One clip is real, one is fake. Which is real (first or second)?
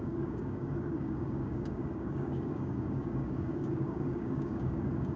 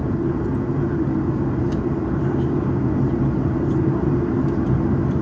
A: second